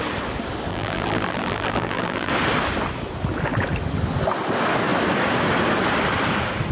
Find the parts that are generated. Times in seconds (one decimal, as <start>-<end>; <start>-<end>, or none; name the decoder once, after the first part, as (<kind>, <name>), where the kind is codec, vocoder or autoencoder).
0.7-2.3 (vocoder, BigVGAN v2)